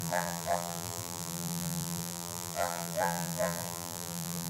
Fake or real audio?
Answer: fake